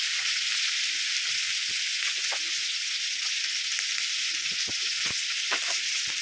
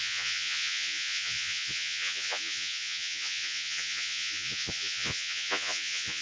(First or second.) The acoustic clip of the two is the first